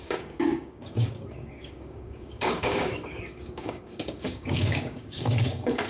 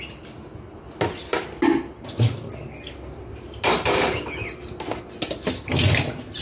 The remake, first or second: first